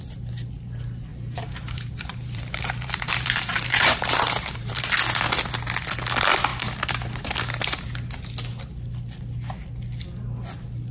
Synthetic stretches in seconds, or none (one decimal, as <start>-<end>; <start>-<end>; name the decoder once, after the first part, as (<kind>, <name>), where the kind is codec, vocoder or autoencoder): 1.1-4.8 (vocoder, BigVGAN v2); 6.5-7.2